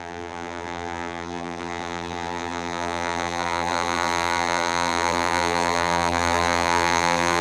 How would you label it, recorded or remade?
remade